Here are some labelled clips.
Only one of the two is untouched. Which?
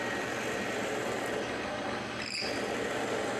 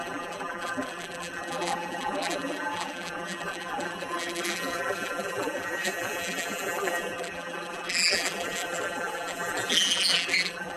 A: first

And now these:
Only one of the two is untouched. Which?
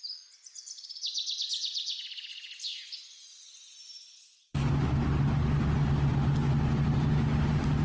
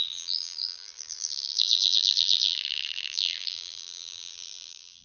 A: first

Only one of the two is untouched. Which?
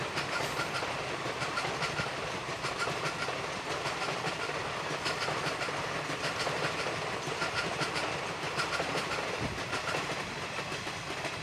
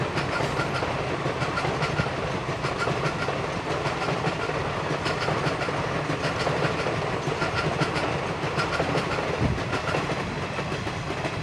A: second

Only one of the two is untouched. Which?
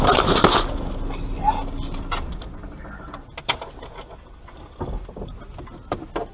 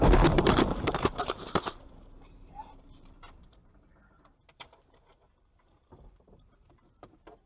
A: first